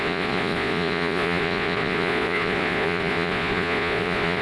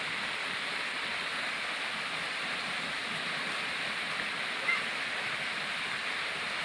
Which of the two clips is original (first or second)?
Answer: second